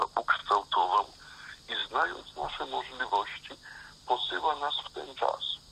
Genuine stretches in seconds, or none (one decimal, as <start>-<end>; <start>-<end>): 0.0-1.8; 5.2-5.7